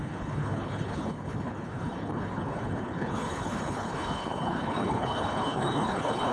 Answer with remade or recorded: remade